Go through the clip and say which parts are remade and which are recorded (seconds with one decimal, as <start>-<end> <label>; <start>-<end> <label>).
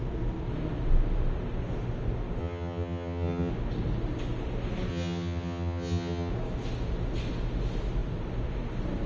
0.0-2.4 recorded; 2.4-3.5 remade; 3.5-4.9 recorded; 4.9-6.3 remade; 6.3-9.1 recorded